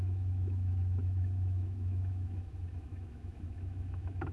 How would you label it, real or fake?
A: fake